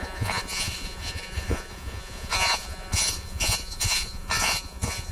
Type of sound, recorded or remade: remade